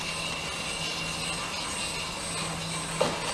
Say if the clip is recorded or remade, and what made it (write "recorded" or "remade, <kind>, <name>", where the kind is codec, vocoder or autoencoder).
recorded